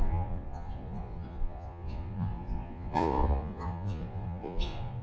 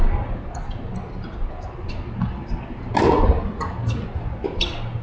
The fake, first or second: first